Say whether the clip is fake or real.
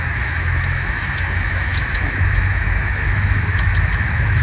fake